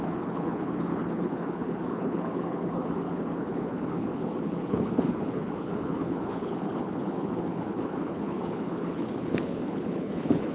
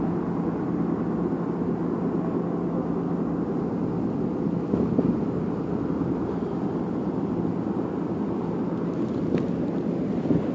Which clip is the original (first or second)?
second